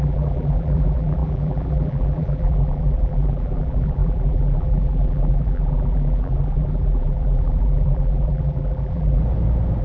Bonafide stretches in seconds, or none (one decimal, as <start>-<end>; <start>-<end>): 9.2-9.8